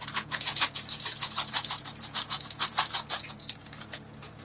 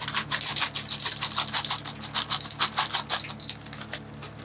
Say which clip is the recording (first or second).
second